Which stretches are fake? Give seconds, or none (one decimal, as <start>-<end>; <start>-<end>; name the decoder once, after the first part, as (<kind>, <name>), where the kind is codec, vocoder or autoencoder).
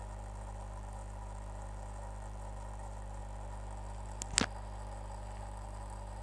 0.0-3.2 (vocoder, BigVGAN v2); 5.4-6.2